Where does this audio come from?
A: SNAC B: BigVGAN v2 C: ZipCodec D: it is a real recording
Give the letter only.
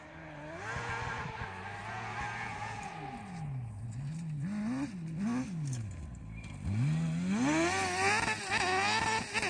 D